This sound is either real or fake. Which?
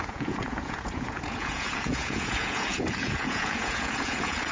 fake